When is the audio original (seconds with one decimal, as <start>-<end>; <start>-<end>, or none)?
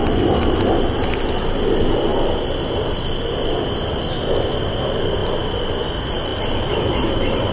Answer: 0.0-7.5